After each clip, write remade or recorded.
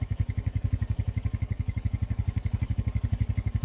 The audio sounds remade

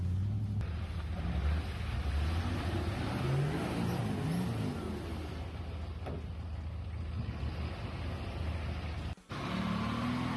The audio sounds recorded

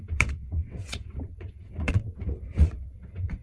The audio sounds remade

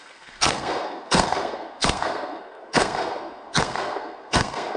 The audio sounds remade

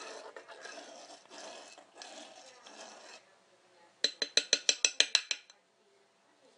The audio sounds recorded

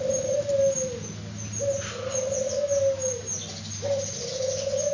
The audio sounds recorded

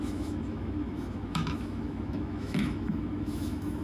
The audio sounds remade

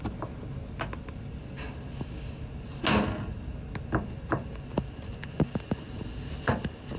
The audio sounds recorded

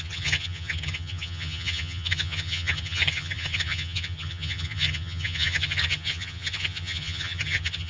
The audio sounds remade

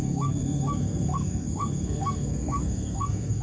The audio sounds remade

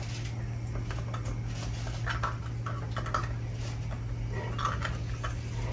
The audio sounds recorded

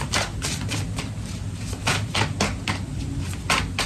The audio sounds recorded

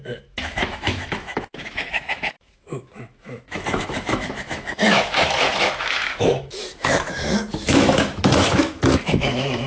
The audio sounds remade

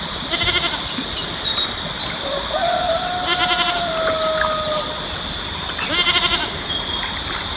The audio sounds recorded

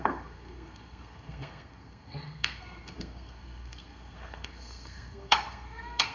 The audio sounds remade